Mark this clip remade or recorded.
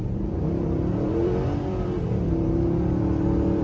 remade